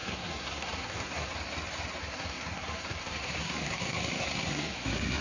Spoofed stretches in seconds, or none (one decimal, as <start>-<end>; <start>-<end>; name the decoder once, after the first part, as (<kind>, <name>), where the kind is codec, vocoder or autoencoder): 0.0-1.3 (codec, SNAC); 2.0-5.2